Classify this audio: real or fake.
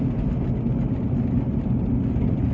real